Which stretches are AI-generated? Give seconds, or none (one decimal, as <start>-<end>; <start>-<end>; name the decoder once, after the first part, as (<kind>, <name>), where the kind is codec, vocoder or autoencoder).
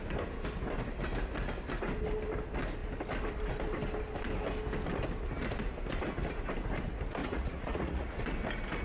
7.2-8.2 (vocoder, Vocos)